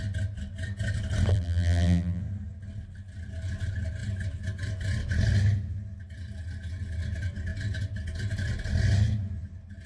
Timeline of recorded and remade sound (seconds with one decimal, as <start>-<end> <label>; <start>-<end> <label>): 0.0-1.3 recorded; 1.3-2.2 remade; 2.2-9.9 recorded